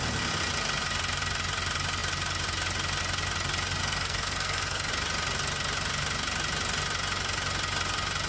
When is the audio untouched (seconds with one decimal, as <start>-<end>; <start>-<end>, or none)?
0.0-3.8; 4.9-8.3